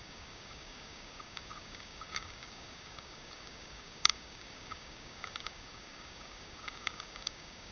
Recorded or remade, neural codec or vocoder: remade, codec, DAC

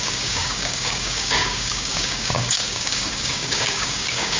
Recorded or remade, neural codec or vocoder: remade, codec, DAC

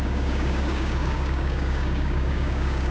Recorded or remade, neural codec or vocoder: remade, codec, DAC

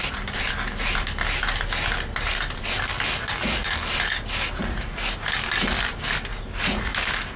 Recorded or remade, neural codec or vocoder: recorded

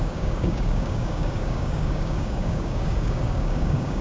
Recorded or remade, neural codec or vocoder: remade, codec, DAC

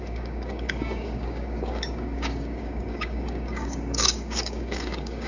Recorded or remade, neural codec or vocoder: remade, codec, DAC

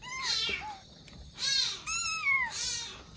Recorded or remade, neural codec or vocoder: recorded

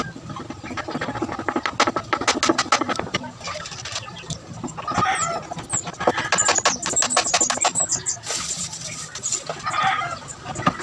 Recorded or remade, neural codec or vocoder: recorded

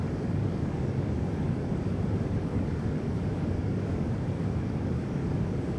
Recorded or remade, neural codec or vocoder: remade, codec, DAC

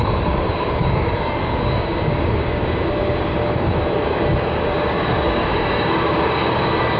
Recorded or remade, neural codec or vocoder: remade, codec, DAC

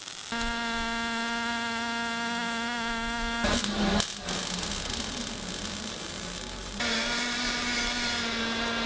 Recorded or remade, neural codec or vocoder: recorded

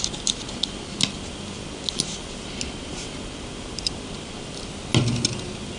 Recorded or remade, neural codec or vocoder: recorded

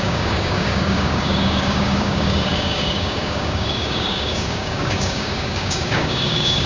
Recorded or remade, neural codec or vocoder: remade, codec, DAC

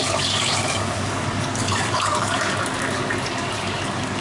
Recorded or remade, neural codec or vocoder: remade, codec, DAC